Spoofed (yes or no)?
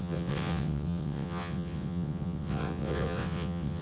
yes